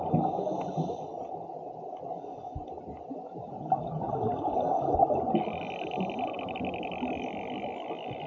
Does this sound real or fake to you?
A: real